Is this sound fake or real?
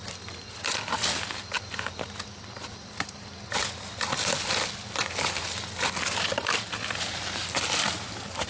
real